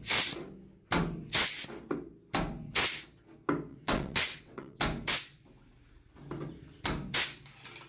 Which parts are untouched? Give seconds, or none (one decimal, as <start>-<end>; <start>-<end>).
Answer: 0.0-3.7; 4.8-7.9